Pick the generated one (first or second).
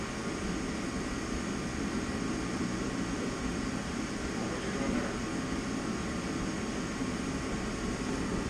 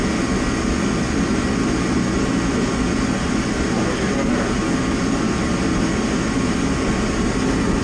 first